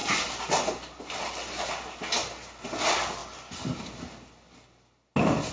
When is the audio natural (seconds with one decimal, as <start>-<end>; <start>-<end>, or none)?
0.0-5.5